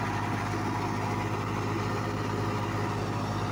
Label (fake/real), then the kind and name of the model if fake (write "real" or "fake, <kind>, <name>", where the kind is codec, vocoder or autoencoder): real